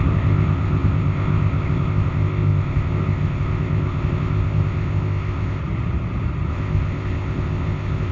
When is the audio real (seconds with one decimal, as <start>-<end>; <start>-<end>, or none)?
5.6-6.5